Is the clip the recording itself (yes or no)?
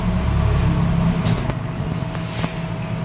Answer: yes